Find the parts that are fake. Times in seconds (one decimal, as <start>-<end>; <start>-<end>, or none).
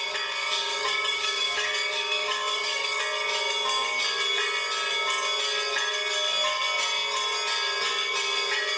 0.4-3.0